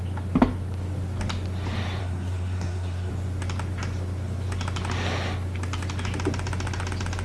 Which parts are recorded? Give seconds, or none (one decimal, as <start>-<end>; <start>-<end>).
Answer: 0.0-2.0; 3.1-7.2